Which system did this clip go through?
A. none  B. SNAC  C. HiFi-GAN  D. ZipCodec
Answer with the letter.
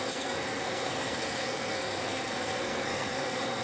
B